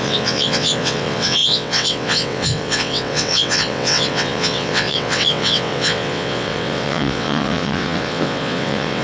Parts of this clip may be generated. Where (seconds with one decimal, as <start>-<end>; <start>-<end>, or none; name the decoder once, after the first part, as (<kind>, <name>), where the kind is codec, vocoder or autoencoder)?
0.0-9.0 (vocoder, WaveNeXt)